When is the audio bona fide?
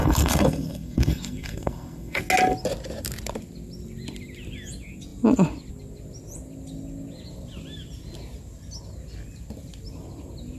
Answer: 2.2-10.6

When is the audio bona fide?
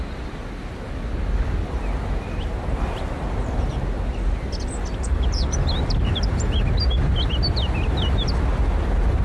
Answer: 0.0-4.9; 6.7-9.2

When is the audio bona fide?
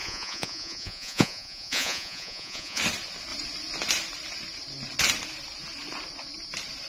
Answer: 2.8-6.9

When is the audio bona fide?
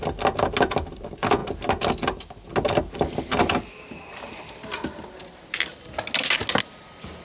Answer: 0.0-7.2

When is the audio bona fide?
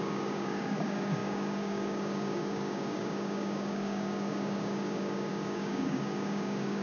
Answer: none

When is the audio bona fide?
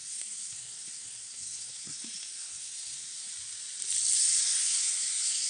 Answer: 3.3-4.4